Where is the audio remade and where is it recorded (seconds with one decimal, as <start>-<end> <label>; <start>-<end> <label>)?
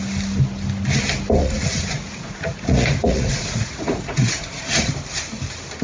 0.0-1.4 recorded; 1.4-4.9 remade; 4.9-5.8 recorded